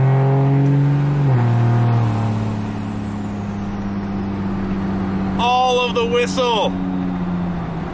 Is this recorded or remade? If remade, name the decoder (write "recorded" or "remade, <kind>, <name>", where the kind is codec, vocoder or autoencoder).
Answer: recorded